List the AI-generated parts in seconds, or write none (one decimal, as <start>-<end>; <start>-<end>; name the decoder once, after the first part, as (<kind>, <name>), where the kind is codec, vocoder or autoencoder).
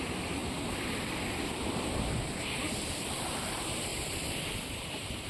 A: 0.0-0.4 (vocoder, BigVGAN v2); 2.8-3.9; 4.8-5.3